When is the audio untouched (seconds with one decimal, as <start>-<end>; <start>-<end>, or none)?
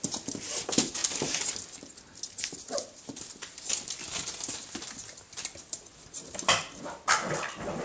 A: 0.0-7.8